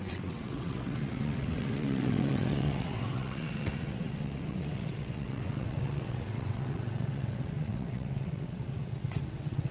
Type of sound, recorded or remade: remade